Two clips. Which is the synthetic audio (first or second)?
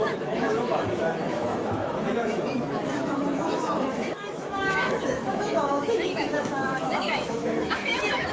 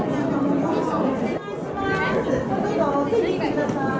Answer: first